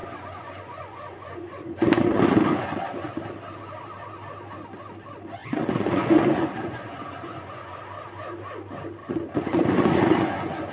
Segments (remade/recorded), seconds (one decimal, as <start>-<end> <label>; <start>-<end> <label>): 0.0-2.2 remade; 2.2-5.4 recorded; 5.4-7.8 remade; 7.8-9.0 recorded; 9.0-10.7 remade